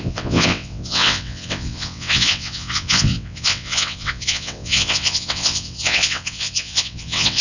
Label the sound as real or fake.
fake